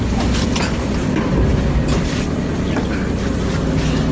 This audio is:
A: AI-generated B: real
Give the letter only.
B